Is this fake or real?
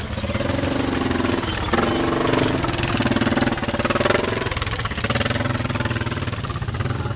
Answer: real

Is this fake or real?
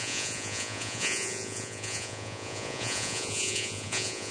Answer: fake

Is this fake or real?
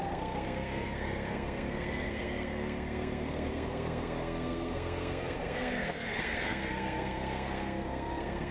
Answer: fake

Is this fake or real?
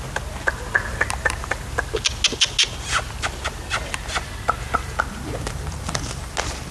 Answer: real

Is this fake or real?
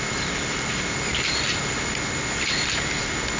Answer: real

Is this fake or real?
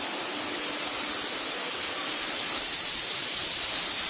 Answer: real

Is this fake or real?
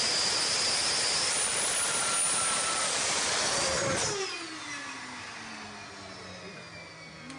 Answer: real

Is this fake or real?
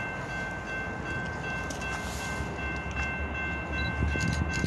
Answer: real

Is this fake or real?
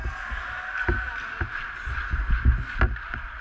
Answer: real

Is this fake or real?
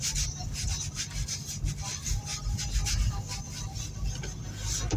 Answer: real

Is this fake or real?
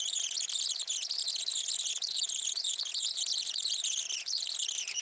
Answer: fake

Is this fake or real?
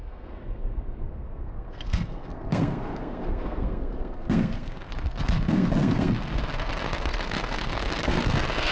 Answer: fake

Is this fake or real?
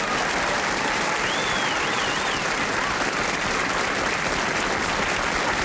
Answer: real